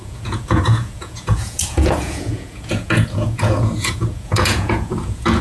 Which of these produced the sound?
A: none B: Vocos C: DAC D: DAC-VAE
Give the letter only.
B